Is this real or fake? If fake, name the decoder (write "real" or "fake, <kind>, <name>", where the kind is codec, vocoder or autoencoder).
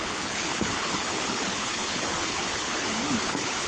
fake, codec, HILCodec